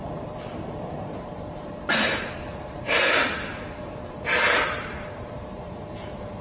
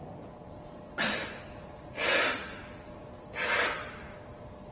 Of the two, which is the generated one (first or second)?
first